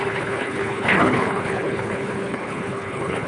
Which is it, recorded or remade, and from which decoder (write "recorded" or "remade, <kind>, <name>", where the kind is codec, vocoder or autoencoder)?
remade, codec, HILCodec